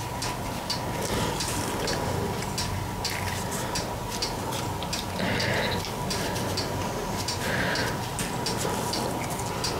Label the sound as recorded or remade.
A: recorded